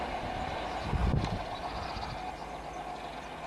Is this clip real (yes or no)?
yes